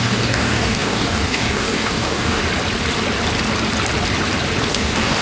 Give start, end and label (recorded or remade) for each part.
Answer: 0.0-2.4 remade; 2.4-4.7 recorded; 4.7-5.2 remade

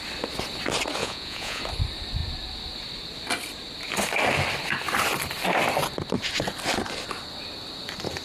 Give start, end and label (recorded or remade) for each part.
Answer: 0.0-1.0 recorded; 1.0-1.6 remade; 1.6-8.2 recorded

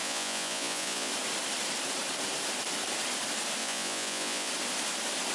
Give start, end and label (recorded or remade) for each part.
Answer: 0.0-1.1 remade; 1.1-3.6 recorded; 3.6-4.5 remade; 4.5-5.3 recorded

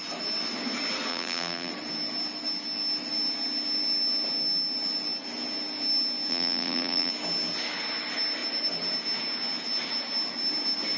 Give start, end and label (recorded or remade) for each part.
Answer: 0.0-1.1 recorded; 1.1-1.7 remade; 1.7-6.3 recorded; 6.3-7.1 remade; 7.1-11.0 recorded

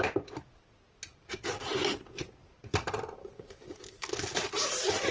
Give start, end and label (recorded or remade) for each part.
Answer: 0.0-1.1 recorded; 1.1-1.8 remade; 1.8-2.4 recorded; 2.4-3.8 remade; 3.8-5.1 recorded